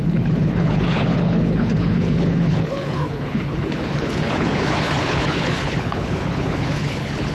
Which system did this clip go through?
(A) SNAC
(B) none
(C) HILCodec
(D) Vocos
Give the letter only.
C